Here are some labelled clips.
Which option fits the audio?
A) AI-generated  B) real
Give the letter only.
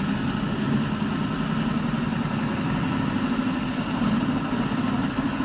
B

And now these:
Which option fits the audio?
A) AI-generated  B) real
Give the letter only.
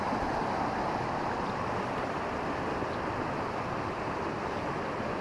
B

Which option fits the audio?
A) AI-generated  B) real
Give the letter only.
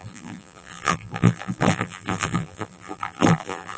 A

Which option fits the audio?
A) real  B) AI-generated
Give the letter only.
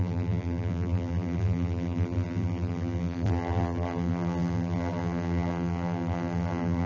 B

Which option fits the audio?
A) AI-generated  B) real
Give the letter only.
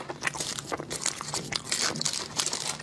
B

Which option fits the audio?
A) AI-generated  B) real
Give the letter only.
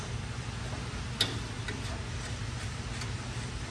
B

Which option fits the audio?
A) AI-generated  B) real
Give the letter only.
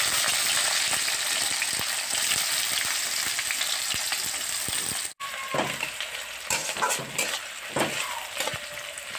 B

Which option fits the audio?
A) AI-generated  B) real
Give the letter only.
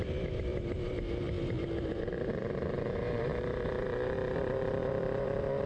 A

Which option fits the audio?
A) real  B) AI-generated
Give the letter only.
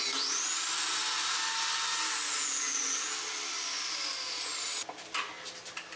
A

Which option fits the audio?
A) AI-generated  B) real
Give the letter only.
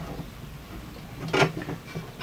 B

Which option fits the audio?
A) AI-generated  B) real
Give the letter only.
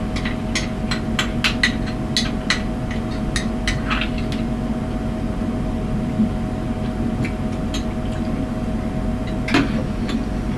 B